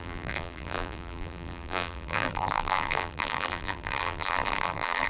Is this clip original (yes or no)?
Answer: no